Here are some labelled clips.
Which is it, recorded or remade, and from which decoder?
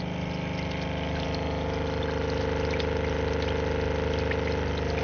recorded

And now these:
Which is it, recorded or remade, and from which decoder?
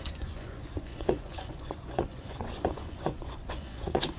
remade, vocoder, Vocos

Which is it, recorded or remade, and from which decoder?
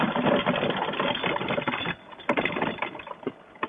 recorded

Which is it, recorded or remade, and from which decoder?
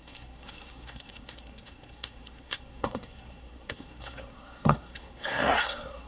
remade, codec, SNAC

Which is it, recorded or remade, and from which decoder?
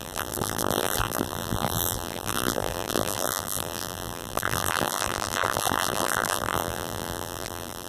remade, vocoder, BigVGAN v2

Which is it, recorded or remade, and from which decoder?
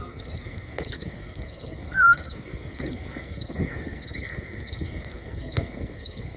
remade, codec, SNAC